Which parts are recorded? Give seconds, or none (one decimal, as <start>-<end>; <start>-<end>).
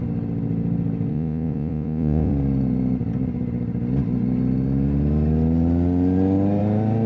0.0-1.1; 2.3-7.1